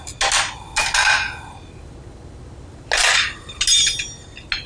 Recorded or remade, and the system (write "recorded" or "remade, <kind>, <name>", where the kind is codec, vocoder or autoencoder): recorded